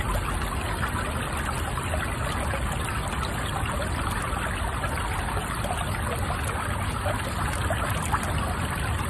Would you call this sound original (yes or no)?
yes